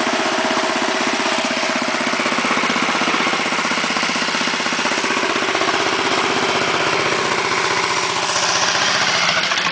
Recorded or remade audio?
recorded